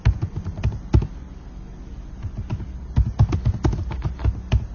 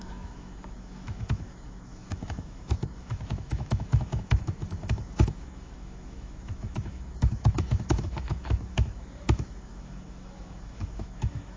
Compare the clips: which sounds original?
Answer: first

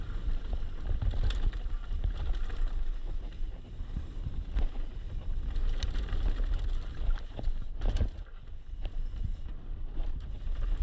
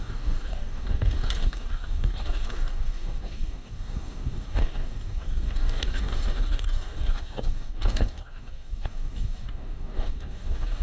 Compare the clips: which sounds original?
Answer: first